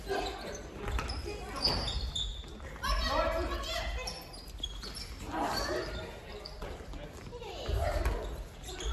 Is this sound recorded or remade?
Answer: recorded